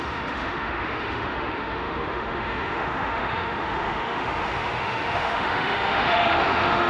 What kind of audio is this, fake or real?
fake